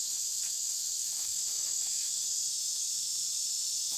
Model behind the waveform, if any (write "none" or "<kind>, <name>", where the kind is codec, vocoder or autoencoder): autoencoder, DAC-VAE